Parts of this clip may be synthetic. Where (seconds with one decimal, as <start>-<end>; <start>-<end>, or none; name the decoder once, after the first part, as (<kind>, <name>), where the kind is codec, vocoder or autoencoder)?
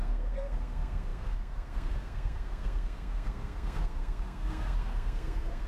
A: 0.0-5.7 (codec, SNAC)